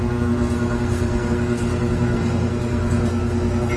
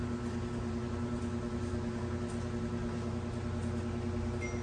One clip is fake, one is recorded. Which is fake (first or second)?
first